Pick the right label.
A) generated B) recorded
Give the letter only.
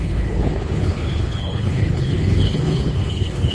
A